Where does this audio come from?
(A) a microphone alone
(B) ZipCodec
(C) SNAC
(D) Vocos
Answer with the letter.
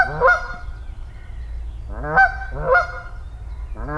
A